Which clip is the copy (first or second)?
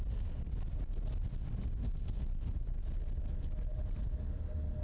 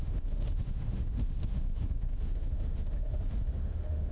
second